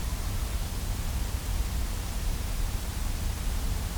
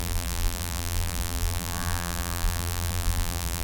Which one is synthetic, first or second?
second